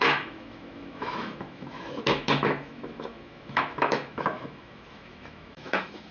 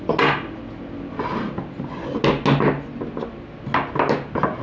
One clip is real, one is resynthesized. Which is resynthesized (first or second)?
first